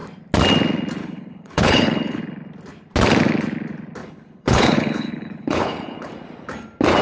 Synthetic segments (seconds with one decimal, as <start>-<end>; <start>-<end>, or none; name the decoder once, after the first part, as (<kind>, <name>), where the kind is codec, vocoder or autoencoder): 1.0-2.2 (codec, HILCodec); 4.0-6.1